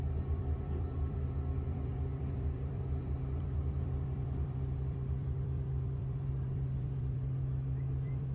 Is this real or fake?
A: fake